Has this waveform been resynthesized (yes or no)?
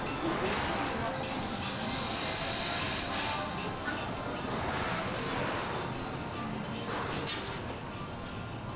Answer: no